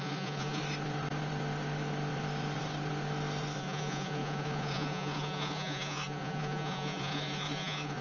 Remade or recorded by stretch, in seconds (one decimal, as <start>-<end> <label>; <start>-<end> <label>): 0.0-0.6 remade; 0.6-3.6 recorded; 3.6-8.0 remade